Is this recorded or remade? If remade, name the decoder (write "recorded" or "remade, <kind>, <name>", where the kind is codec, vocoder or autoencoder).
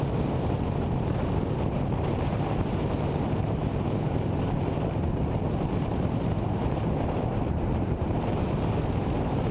remade, vocoder, BigVGAN v2